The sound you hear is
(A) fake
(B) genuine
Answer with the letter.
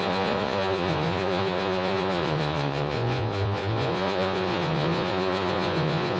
A